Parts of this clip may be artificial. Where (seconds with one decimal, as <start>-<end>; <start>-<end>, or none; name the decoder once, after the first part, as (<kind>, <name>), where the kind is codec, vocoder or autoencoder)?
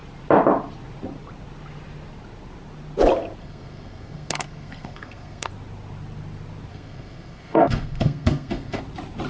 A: 3.4-5.5 (codec, SNAC); 6.7-8.8